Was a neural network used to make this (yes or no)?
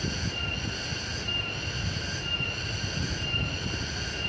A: no